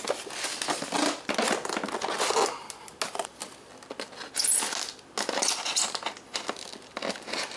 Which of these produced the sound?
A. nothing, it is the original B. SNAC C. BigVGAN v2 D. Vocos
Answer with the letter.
A